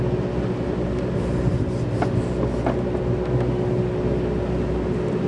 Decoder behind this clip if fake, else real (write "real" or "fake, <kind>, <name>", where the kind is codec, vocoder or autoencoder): real